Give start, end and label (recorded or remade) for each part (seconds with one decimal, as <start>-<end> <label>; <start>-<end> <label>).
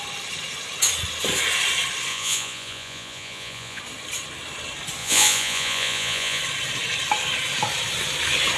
0.0-2.1 recorded; 2.1-3.8 remade; 3.8-5.0 recorded; 5.0-6.4 remade; 6.4-8.6 recorded